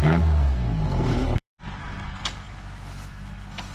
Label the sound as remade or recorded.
remade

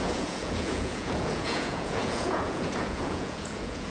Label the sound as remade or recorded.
remade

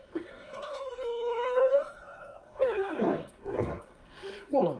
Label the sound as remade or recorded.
remade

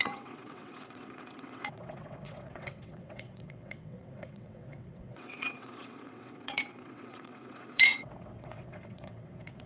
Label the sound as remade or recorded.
remade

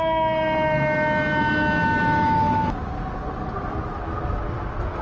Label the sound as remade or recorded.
recorded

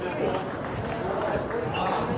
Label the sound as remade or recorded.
recorded